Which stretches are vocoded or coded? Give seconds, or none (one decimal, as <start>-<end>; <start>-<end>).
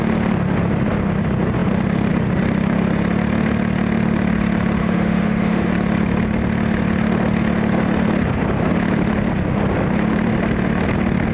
4.8-5.7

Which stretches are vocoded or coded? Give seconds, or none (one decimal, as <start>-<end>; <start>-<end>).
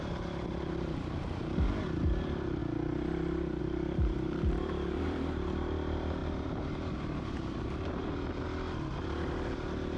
0.0-2.6; 3.6-8.0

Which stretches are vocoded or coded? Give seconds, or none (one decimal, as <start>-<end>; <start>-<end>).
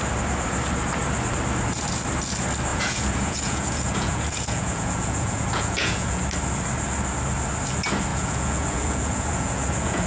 2.7-6.2; 8.1-10.1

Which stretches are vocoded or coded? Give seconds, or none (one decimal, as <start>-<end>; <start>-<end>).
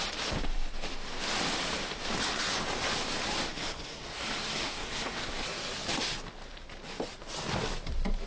3.5-5.3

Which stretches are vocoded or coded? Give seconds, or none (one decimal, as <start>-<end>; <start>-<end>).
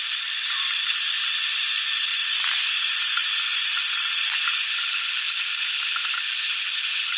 none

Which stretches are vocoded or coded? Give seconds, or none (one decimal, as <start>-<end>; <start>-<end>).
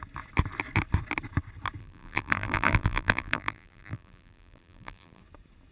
1.8-5.2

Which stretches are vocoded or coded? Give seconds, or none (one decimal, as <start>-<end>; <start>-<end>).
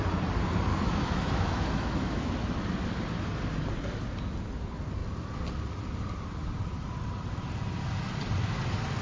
0.7-2.3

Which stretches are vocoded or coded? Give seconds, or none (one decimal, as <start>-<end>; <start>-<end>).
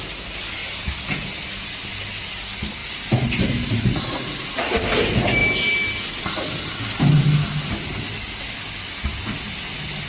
none